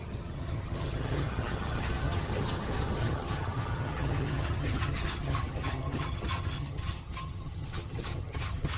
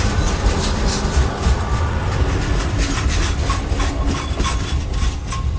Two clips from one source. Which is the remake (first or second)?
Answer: first